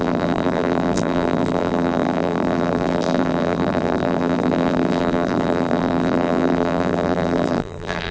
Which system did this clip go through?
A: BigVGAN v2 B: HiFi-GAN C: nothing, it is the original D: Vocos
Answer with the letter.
A